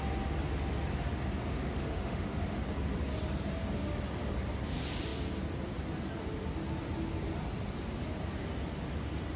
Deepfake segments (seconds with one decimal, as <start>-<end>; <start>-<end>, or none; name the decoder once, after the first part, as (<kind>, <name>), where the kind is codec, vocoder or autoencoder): 1.5-2.6 (autoencoder, DAC-VAE)